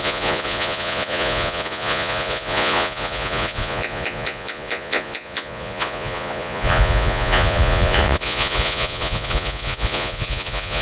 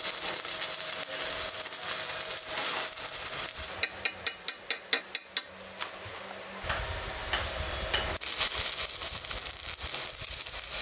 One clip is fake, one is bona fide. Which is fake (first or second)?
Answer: first